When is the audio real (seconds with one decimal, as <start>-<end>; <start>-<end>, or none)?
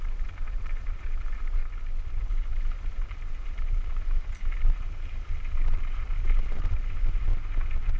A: 1.6-2.2; 7.3-8.0